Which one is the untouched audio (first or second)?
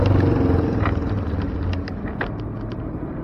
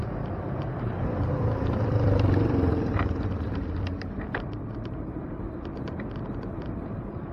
first